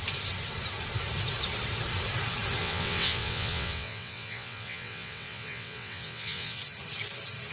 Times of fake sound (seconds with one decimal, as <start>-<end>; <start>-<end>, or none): 2.6-6.6